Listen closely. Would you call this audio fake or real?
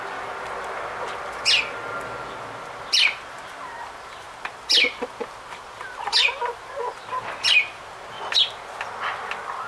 real